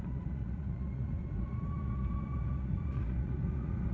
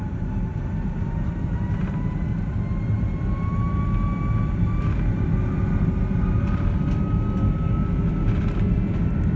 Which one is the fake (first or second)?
first